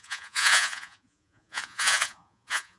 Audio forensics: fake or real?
fake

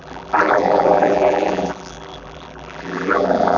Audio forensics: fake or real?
fake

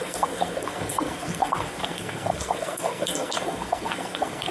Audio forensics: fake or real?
fake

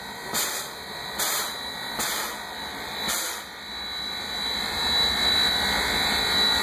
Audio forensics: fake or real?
real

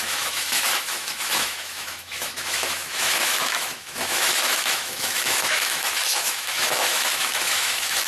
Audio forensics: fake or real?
fake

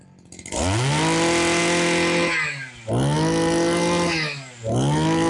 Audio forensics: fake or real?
real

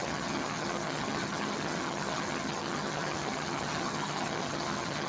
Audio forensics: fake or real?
fake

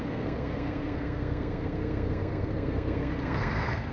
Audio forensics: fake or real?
fake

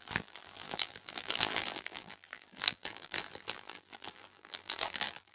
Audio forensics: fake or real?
fake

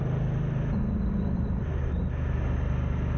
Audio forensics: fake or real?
real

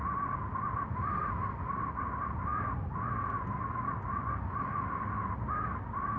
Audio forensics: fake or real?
real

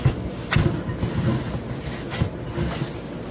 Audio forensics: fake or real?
real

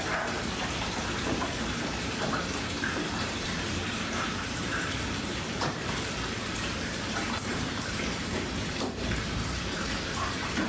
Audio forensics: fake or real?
fake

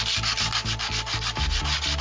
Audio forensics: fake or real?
real